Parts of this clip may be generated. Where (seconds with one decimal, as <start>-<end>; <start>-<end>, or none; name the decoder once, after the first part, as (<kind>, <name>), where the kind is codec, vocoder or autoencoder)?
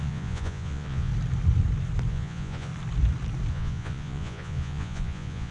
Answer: 0.0-1.1 (vocoder, Vocos); 2.1-2.7; 3.5-5.5